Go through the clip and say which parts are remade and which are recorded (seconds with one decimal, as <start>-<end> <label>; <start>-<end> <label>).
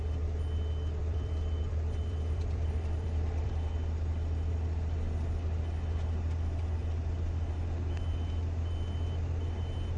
0.0-1.0 recorded; 1.0-3.5 remade; 3.5-10.0 recorded